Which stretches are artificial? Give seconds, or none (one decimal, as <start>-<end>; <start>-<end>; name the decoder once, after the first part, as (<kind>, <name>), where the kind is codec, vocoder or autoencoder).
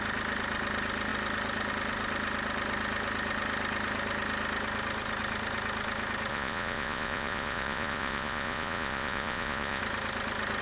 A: 6.3-9.8 (vocoder, Vocos)